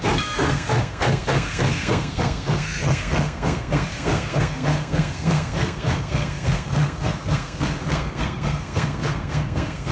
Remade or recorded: remade